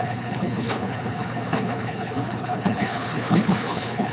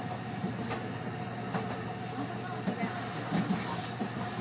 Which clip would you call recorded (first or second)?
second